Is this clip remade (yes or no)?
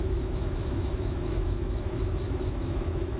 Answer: yes